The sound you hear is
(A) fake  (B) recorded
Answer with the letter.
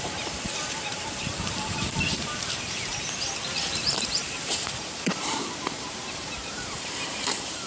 A